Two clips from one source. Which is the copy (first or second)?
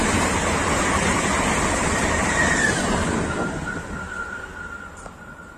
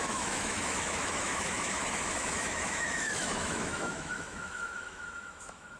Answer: second